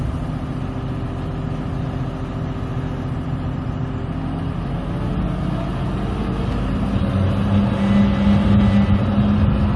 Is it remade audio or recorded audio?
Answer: recorded